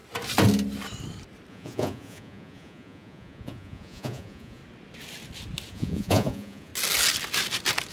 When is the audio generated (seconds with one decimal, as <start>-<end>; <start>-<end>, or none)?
1.5-4.6; 5.7-6.7